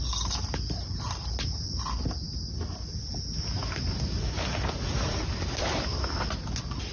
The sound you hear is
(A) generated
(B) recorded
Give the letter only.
B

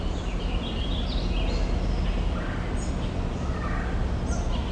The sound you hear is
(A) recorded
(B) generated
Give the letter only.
A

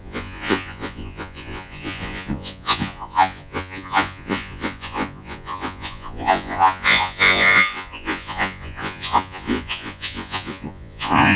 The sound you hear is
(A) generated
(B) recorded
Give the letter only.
A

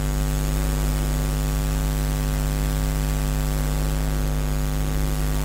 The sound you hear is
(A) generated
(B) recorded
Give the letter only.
B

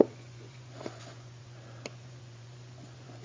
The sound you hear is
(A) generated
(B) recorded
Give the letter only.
A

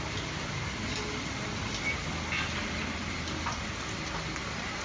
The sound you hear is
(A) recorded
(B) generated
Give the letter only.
A